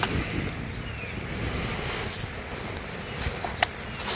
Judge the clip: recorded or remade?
recorded